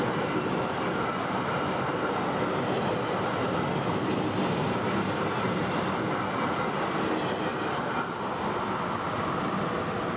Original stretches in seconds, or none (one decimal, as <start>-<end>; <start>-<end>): 0.0-7.5; 8.1-10.2